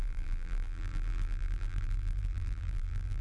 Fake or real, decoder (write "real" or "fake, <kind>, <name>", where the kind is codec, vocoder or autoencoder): fake, vocoder, BigVGAN v2